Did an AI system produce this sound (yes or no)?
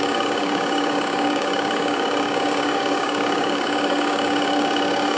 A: yes